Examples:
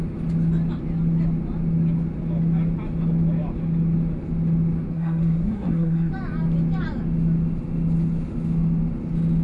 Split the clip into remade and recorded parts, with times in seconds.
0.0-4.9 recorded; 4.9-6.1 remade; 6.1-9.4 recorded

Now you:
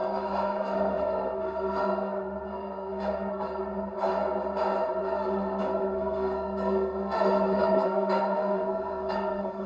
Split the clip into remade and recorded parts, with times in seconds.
0.0-4.1 remade; 4.1-5.0 recorded; 5.0-9.7 remade

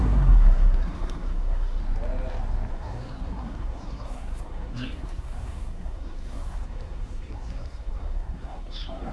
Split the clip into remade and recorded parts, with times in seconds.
0.0-1.8 remade; 1.8-2.7 recorded; 2.7-9.1 remade

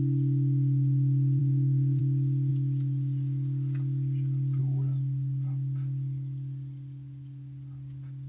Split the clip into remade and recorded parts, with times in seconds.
0.0-1.4 recorded; 1.4-2.0 remade; 2.0-8.3 recorded

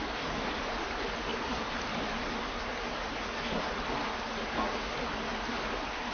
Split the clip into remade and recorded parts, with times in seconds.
0.0-6.1 recorded

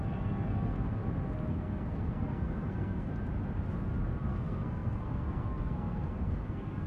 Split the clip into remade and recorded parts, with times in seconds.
0.0-1.0 remade; 1.0-1.5 recorded; 1.5-3.1 remade; 3.1-4.2 recorded; 4.2-6.9 remade